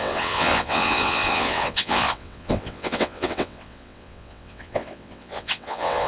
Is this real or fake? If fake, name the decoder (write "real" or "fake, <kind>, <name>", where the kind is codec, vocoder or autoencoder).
fake, vocoder, WaveNeXt